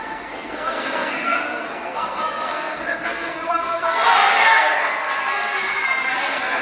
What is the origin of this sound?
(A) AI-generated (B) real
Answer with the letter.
A